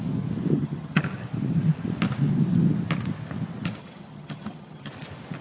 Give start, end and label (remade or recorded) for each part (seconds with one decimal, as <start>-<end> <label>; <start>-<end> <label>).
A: 0.0-0.5 recorded; 0.5-1.0 remade; 1.0-3.8 recorded; 3.8-4.9 remade; 4.9-5.4 recorded